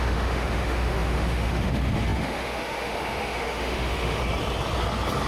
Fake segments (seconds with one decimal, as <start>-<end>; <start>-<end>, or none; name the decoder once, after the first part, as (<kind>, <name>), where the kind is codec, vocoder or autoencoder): 0.0-4.2 (autoencoder, DAC-VAE)